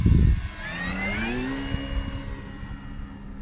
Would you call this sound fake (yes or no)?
no